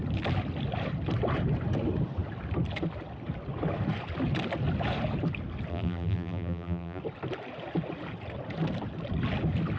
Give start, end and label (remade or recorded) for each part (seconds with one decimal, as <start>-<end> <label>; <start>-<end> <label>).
0.0-5.7 recorded; 5.7-7.0 remade; 7.0-9.8 recorded